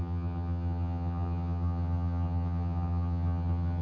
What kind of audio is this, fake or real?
fake